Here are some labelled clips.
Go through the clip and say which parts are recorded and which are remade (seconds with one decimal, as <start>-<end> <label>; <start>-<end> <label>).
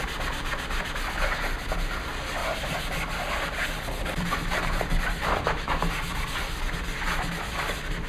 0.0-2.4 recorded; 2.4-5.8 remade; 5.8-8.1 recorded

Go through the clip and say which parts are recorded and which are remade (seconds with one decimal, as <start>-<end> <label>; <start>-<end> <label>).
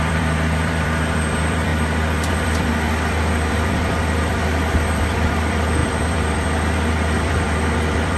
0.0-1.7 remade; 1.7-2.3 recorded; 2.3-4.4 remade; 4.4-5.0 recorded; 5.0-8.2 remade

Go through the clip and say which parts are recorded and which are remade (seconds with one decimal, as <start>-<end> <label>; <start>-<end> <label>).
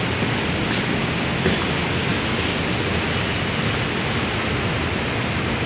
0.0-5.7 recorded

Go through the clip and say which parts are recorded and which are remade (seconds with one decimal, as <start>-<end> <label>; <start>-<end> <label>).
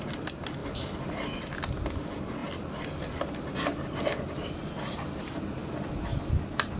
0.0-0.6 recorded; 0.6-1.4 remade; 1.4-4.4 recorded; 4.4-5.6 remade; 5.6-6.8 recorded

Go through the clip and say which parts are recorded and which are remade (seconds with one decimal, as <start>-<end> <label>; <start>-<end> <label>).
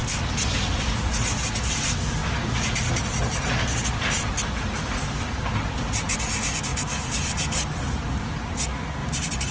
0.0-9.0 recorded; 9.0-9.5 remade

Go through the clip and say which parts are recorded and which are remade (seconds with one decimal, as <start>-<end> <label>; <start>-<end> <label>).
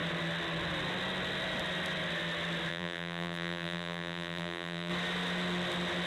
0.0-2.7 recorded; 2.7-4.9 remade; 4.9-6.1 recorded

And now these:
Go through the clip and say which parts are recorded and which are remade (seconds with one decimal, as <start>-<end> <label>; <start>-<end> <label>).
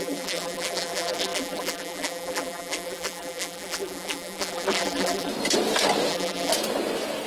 0.0-5.3 remade; 5.3-6.1 recorded; 6.1-6.5 remade; 6.5-7.3 recorded